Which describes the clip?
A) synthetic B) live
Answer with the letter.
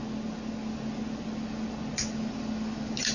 B